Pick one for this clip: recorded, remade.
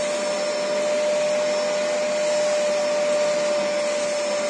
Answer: recorded